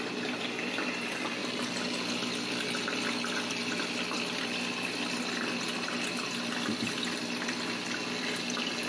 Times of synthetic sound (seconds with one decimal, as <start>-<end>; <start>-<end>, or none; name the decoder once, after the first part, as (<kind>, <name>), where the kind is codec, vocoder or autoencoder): none